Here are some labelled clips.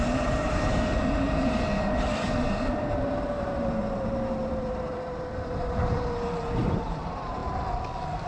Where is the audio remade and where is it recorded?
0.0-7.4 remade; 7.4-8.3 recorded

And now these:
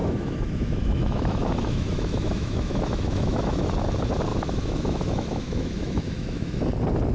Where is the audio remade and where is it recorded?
0.0-3.7 remade; 3.7-4.3 recorded; 4.3-6.6 remade; 6.6-7.1 recorded

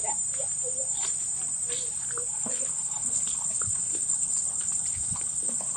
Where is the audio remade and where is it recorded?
0.0-2.3 recorded; 2.3-5.8 remade

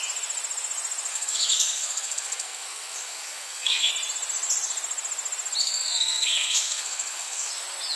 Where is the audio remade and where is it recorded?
0.0-1.1 recorded; 1.1-3.9 remade; 3.9-5.6 recorded; 5.6-7.5 remade; 7.5-8.0 recorded

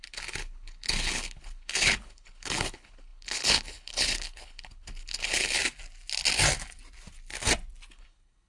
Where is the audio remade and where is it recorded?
0.0-5.6 remade; 5.6-7.9 recorded; 7.9-8.5 remade

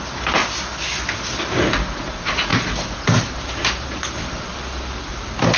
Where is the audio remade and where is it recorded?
0.0-0.4 remade; 0.4-1.4 recorded; 1.4-4.5 remade; 4.5-5.1 recorded; 5.1-5.6 remade